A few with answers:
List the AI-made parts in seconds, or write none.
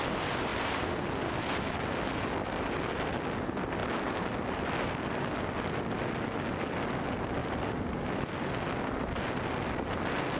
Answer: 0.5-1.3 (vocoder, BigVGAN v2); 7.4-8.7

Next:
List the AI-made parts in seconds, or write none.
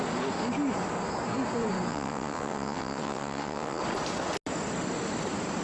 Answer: 1.9-3.8 (vocoder, WaveNeXt)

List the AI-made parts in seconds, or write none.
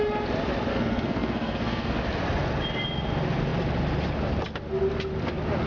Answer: 0.7-2.0 (codec, SNAC)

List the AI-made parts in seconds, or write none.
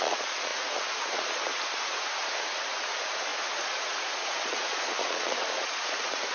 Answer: 0.0-6.3 (vocoder, Vocos)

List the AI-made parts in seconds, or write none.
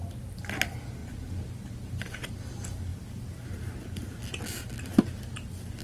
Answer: none